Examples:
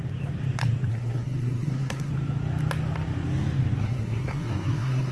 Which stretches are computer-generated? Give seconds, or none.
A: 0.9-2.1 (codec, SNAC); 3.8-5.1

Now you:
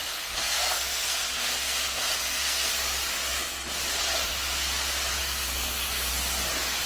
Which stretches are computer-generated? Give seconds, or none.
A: 0.0-2.7 (codec, SNAC); 5.2-6.1

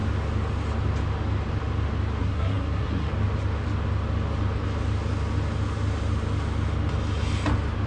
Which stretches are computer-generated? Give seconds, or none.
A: 2.2-3.1 (codec, SNAC)

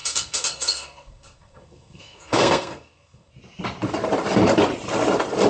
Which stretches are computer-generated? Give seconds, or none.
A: 0.0-3.3 (codec, SNAC)

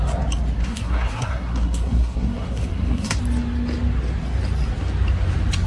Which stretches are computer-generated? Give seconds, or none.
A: 0.6-3.2 (codec, SNAC)